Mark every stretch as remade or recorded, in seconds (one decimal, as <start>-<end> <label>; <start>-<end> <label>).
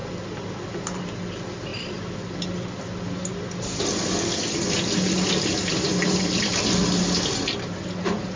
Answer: 0.0-8.4 recorded